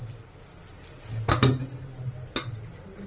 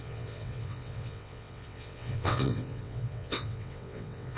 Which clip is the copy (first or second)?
second